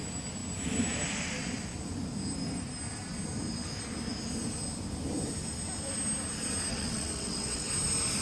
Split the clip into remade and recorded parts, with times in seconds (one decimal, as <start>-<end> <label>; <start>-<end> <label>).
0.0-6.7 recorded; 6.7-7.7 remade; 7.7-8.2 recorded